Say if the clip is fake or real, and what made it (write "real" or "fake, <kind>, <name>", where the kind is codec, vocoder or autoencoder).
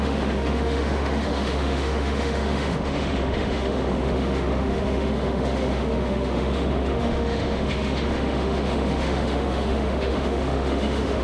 fake, autoencoder, DAC-VAE